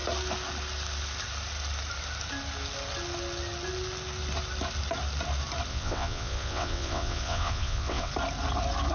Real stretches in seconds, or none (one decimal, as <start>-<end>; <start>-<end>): 0.0-5.7; 8.1-8.9

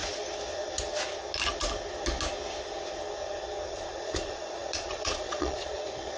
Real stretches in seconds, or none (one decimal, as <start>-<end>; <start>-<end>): 0.0-3.7

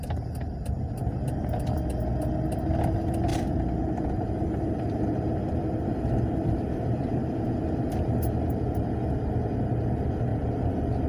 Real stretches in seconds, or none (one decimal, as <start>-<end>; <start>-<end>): 0.0-3.3; 7.7-11.1

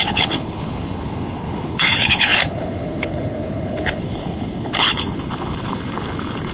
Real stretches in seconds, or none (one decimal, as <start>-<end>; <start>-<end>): none

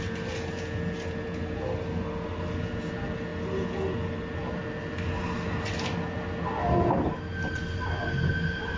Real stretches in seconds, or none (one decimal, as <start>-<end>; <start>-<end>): 0.0-8.8